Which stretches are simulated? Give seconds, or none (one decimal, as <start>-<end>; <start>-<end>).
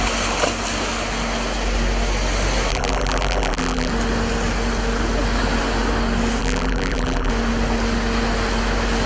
2.7-3.9; 6.4-7.3